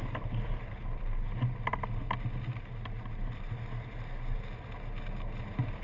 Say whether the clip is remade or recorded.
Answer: recorded